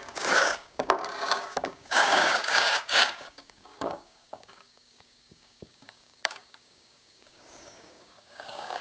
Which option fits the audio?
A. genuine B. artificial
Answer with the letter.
B